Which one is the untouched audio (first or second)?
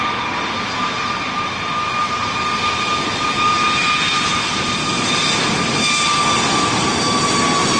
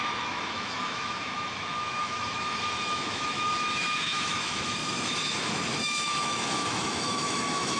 first